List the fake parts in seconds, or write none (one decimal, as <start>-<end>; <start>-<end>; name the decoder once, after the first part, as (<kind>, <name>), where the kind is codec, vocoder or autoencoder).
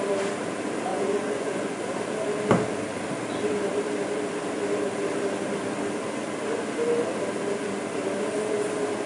0.9-1.8 (vocoder, Vocos)